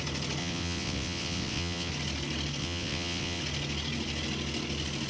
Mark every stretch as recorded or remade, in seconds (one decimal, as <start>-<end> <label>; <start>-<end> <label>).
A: 0.0-0.4 recorded; 0.4-1.9 remade; 1.9-2.6 recorded; 2.6-3.4 remade; 3.4-5.1 recorded